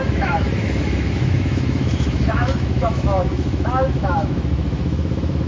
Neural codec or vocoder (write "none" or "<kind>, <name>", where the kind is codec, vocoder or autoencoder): autoencoder, DAC-VAE